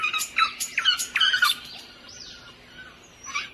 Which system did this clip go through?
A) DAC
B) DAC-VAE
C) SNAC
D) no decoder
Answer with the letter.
D